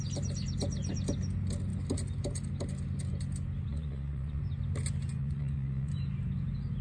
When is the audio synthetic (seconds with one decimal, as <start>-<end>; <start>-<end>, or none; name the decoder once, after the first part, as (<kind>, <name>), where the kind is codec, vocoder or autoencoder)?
3.7-4.4 (vocoder, Vocos); 5.2-5.9